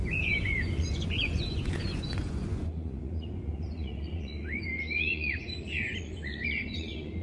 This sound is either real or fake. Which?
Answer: fake